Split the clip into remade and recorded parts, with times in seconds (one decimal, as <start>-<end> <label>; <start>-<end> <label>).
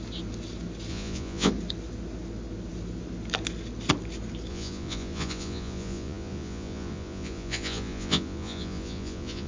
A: 0.0-0.9 recorded; 0.9-1.5 remade; 1.5-4.5 recorded; 4.5-9.5 remade